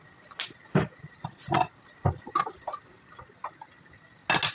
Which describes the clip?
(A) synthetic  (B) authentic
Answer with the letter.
B